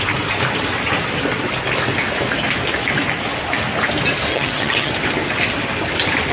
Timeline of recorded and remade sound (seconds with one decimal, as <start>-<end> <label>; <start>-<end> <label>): 0.0-4.3 recorded; 4.3-4.9 remade; 4.9-6.3 recorded